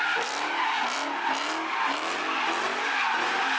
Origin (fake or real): real